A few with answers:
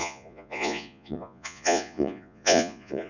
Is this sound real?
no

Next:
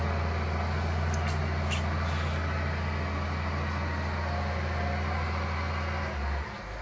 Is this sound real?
yes